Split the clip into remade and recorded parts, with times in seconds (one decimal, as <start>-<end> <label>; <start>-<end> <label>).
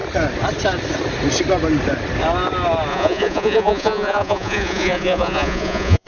0.0-2.9 recorded; 2.9-6.1 remade